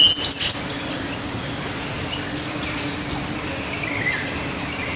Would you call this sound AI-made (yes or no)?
no